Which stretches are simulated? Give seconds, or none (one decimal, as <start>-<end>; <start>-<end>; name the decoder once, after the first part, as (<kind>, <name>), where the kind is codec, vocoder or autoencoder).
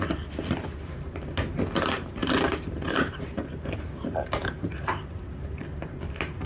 2.2-5.2 (vocoder, BigVGAN v2)